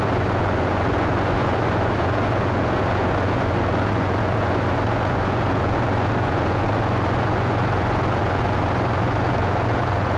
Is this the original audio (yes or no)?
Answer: no